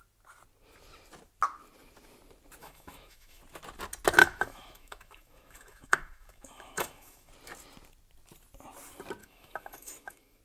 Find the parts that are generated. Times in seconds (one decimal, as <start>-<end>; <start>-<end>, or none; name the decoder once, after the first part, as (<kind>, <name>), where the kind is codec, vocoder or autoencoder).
2.6-3.4 (autoencoder, DAC-VAE); 4.2-7.3; 9.2-10.4